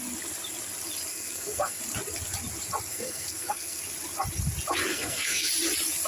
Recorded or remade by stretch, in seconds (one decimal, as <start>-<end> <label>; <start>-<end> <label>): 0.0-1.1 recorded; 1.1-1.8 remade; 1.8-2.9 recorded; 2.9-3.8 remade; 3.8-4.9 recorded; 4.9-5.5 remade; 5.5-6.1 recorded